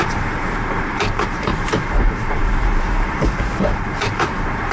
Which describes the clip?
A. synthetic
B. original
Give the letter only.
A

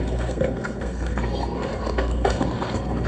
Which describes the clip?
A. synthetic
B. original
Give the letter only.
A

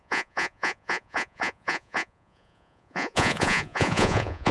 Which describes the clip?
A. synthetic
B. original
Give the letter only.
A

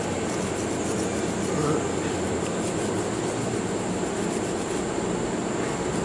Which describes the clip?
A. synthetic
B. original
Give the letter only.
B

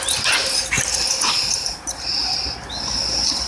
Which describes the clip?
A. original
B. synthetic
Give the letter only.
A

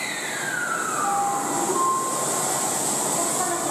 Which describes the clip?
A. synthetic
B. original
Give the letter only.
B